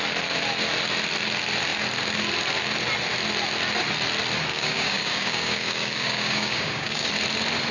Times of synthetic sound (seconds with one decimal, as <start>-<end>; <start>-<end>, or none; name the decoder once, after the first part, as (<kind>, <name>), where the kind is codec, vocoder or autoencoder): 4.5-7.1 (codec, DAC)